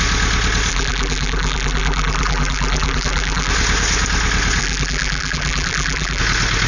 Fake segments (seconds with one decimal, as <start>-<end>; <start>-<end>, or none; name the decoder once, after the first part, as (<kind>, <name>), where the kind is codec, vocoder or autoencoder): 0.7-3.5 (vocoder, BigVGAN v2); 4.6-6.2

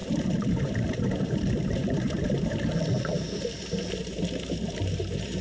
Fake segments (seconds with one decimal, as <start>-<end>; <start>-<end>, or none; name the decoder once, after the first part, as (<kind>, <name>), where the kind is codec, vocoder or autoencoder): 0.0-5.4 (vocoder, BigVGAN v2)

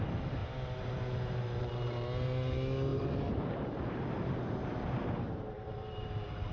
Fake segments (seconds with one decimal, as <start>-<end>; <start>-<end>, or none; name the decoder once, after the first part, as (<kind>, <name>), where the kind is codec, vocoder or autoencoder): 0.4-1.7 (vocoder, BigVGAN v2); 2.9-6.5

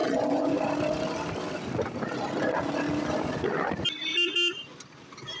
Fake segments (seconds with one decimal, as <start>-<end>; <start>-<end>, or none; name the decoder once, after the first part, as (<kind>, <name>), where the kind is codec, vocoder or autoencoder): 0.0-0.6 (vocoder, Vocos)

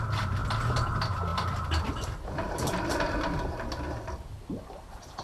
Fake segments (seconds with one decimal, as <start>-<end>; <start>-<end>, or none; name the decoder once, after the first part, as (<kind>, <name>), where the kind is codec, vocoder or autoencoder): 1.3-4.4 (vocoder, BigVGAN v2)

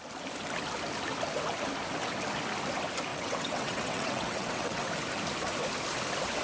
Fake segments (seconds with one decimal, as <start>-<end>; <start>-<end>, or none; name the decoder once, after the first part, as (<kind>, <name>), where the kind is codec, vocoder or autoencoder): 3.1-4.9 (vocoder, WaveNeXt)